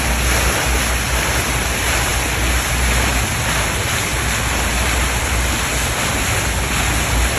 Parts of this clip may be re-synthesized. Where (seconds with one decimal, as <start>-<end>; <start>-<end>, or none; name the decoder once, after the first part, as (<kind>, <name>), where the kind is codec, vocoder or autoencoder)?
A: none